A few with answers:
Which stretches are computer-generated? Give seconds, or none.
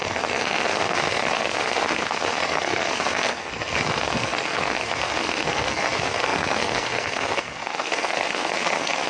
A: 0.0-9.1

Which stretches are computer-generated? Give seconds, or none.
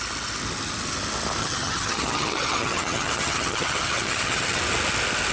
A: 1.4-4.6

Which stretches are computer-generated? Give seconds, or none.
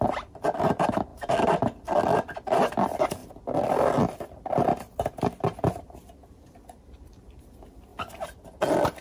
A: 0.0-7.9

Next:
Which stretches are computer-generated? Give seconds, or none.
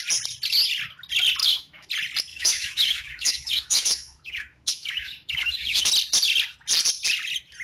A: 1.4-1.9; 2.3-5.9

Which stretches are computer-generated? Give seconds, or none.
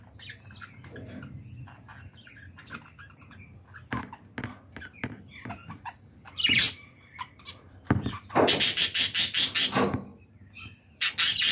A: 5.6-8.8; 10.1-11.1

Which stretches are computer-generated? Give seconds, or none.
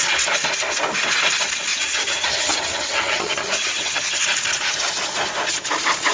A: 1.7-4.2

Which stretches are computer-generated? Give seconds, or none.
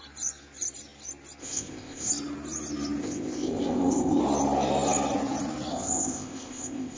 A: 1.4-2.1; 3.0-4.2; 5.7-7.0